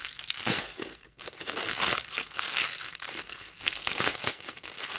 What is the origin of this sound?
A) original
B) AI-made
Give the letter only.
B